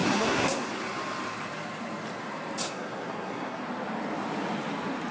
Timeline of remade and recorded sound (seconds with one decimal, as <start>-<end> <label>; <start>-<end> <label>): 0.0-0.7 remade; 0.7-2.6 recorded; 2.6-3.6 remade; 3.6-5.1 recorded